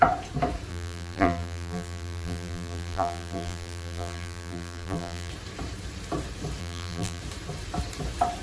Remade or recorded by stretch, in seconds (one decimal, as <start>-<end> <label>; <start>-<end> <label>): 0.0-0.7 recorded; 0.7-5.3 remade; 5.3-6.6 recorded; 6.6-7.2 remade; 7.2-8.4 recorded